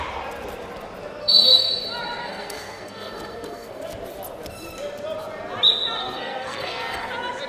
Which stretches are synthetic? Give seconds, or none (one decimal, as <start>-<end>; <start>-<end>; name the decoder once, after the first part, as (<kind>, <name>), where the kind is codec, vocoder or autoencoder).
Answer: 1.2-1.7 (codec, SNAC); 2.2-3.8; 6.0-7.1